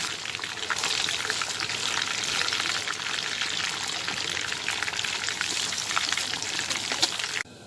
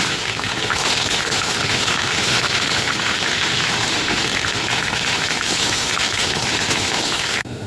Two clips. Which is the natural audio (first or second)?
first